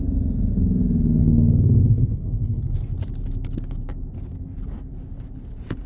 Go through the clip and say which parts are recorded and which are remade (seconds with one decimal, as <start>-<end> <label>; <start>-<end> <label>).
0.0-1.2 recorded; 1.2-2.6 remade; 2.6-5.9 recorded